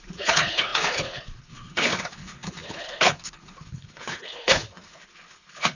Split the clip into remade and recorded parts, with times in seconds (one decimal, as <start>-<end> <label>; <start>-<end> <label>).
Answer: 0.0-5.8 remade